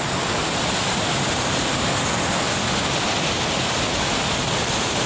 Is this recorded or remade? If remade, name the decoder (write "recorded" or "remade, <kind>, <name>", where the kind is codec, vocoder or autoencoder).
recorded